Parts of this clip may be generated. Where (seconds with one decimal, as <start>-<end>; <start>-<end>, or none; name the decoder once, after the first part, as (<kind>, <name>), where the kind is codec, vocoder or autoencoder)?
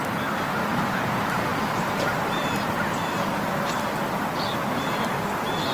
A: none